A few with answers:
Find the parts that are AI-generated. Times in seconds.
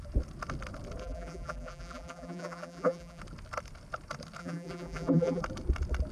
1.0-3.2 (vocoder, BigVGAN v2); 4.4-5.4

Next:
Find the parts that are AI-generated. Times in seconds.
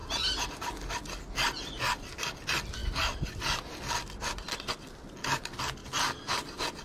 none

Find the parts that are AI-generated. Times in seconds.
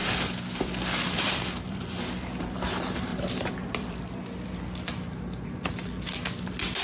0.0-2.6 (vocoder, BigVGAN v2); 3.1-5.2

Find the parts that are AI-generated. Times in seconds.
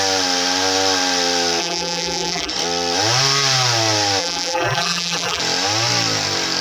1.6-2.5 (vocoder, BigVGAN v2); 4.2-5.4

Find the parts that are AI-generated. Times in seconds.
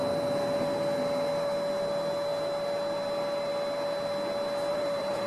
4.7-5.3 (vocoder, BigVGAN v2)